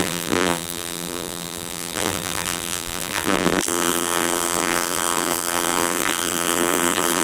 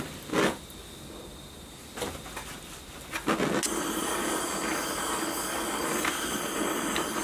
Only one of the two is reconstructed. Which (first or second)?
first